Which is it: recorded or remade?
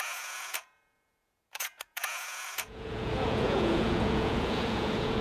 remade